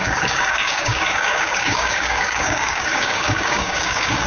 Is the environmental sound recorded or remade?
remade